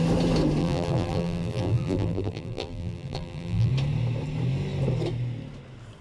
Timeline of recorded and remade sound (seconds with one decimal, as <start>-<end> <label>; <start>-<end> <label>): 0.0-0.6 recorded; 0.6-3.7 remade; 3.7-6.0 recorded